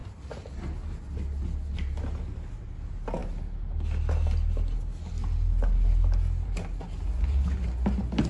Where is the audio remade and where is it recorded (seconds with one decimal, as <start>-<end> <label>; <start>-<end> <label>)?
0.0-8.3 recorded